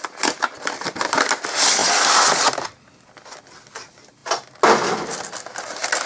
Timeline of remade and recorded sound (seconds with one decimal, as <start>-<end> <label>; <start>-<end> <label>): 0.0-6.1 recorded

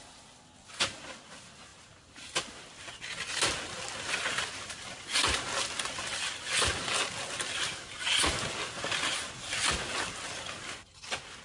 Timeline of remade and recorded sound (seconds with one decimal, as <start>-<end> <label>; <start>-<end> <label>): 0.0-11.4 recorded

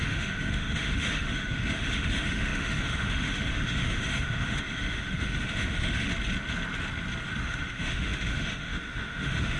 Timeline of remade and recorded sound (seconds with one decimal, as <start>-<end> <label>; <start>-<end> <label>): 0.0-6.1 remade; 6.1-7.4 recorded; 7.4-9.6 remade

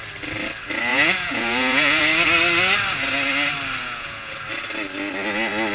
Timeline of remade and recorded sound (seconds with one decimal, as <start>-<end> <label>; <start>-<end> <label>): 0.0-0.9 recorded; 0.9-2.0 remade; 2.0-3.8 recorded; 3.8-4.3 remade; 4.3-5.7 recorded

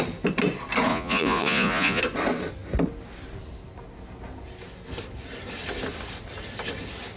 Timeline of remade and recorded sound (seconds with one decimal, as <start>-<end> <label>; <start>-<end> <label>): 0.0-0.9 recorded; 0.9-2.0 remade; 2.0-7.2 recorded

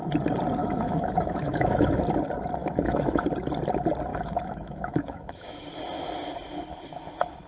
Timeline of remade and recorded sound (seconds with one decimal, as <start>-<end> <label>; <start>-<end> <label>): 0.0-0.6 recorded; 0.6-2.0 remade; 2.0-2.6 recorded; 2.6-3.3 remade; 3.3-4.1 recorded; 4.1-5.7 remade; 5.7-7.5 recorded

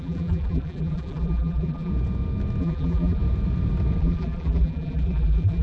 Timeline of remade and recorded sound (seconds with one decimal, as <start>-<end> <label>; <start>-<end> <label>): 0.0-1.9 remade; 1.9-2.6 recorded; 2.6-3.2 remade; 3.2-4.0 recorded; 4.0-5.6 remade

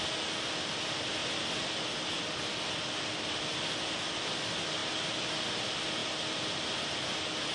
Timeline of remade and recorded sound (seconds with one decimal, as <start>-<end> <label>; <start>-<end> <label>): 0.0-7.5 recorded